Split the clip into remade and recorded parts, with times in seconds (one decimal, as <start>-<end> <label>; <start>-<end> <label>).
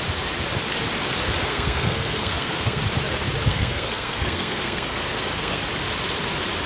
0.0-1.5 recorded; 1.5-2.8 remade; 2.8-3.5 recorded; 3.5-5.6 remade; 5.6-6.7 recorded